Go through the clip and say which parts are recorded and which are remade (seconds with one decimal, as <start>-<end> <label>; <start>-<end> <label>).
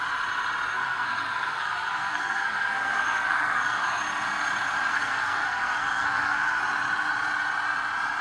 0.0-0.7 recorded; 0.7-4.0 remade; 4.0-4.9 recorded; 4.9-6.6 remade; 6.6-8.2 recorded